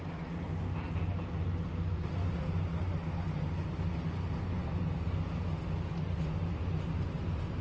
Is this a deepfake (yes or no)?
no